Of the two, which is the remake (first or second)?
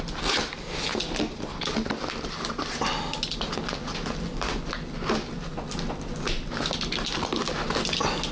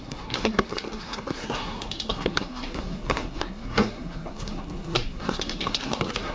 second